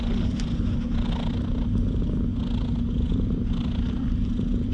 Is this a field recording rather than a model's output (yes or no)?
yes